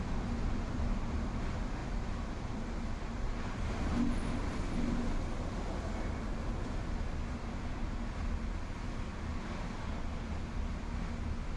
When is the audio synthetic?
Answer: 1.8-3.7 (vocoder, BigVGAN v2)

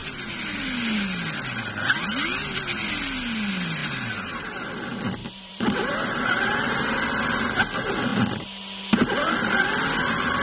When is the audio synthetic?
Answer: 0.0-0.6 (vocoder, BigVGAN v2); 3.8-4.7; 5.2-6.8

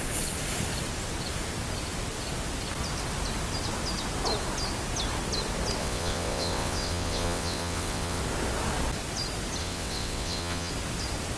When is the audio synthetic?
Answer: 5.8-8.2 (vocoder, WaveNeXt); 9.6-10.7

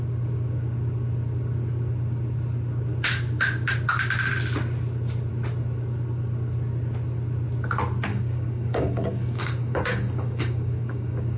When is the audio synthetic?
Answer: 8.1-11.4 (codec, DAC)

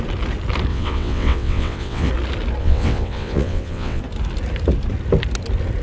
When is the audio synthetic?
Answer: 0.7-2.1 (vocoder, WaveNeXt); 2.6-4.0

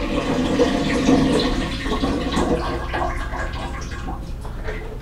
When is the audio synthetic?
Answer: none

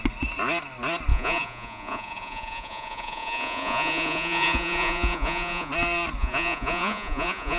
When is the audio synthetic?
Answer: 1.1-5.7 (vocoder, Vocos); 6.2-7.6

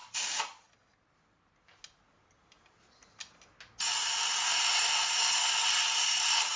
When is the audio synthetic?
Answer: none